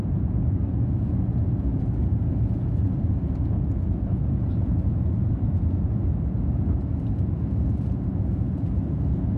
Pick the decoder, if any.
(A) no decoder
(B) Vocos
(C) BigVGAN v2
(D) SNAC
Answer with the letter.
B